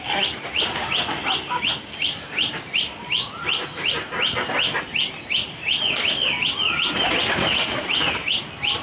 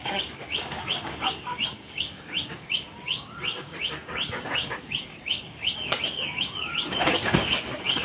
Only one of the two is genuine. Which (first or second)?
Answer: first